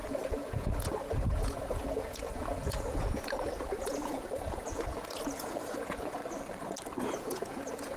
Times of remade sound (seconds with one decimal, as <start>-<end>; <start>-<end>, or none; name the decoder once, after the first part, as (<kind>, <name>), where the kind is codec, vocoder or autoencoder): 0.0-6.2 (vocoder, Vocos); 7.0-8.0